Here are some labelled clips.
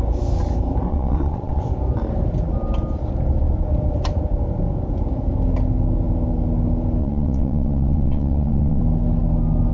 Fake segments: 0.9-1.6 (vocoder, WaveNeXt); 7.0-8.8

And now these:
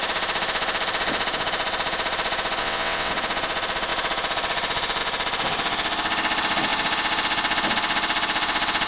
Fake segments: 2.6-3.1 (vocoder, WaveNeXt)

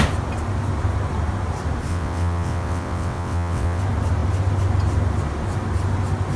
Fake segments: 1.9-3.8 (vocoder, WaveNeXt)

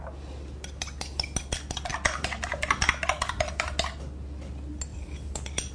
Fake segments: none

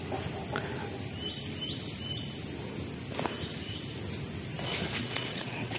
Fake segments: 5.0-5.8 (vocoder, WaveNeXt)

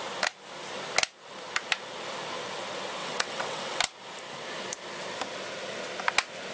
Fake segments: 3.0-3.8 (vocoder, WaveNeXt)

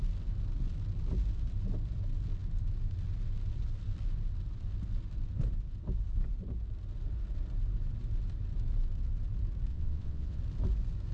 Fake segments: 9.7-10.4 (vocoder, WaveNeXt)